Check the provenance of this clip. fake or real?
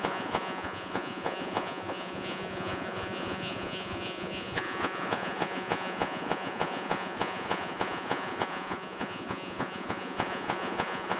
fake